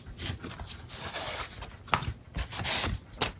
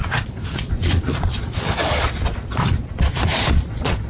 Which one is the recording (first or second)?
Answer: first